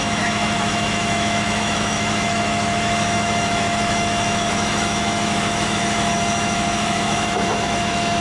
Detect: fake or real fake